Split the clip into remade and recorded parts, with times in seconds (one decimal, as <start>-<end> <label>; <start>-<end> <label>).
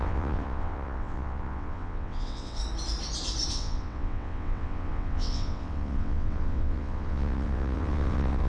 0.0-2.6 remade; 2.6-3.5 recorded; 3.5-8.5 remade